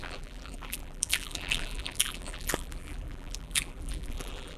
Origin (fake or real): fake